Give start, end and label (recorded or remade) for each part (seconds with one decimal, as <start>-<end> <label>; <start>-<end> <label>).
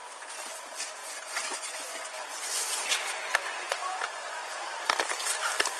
0.0-0.6 remade; 0.6-1.0 recorded; 1.0-4.5 remade; 4.5-5.8 recorded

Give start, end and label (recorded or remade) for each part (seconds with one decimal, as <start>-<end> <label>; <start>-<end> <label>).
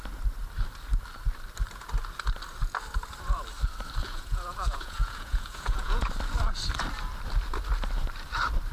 0.0-4.0 recorded; 4.0-6.1 remade; 6.1-8.7 recorded